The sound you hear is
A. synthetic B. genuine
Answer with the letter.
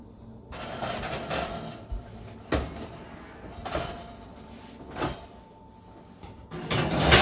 B